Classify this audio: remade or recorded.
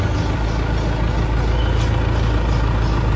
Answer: recorded